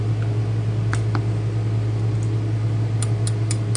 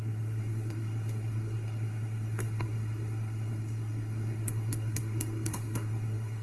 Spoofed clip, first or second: second